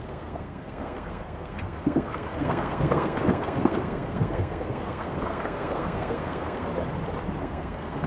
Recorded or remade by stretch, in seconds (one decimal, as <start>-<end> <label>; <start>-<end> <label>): 0.0-6.7 remade; 6.7-7.4 recorded; 7.4-8.1 remade